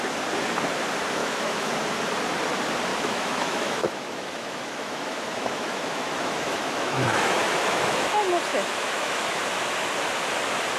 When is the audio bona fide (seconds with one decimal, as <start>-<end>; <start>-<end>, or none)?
0.0-1.2; 1.7-2.9; 8.1-8.5; 9.4-10.8